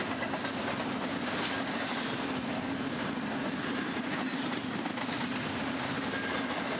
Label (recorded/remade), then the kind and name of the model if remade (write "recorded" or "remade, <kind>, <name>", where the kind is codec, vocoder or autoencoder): recorded